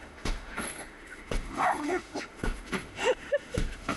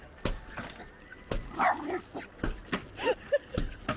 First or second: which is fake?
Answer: first